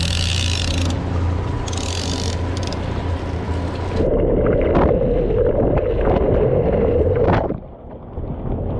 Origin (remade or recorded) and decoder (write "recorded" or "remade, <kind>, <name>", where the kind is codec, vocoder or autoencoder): recorded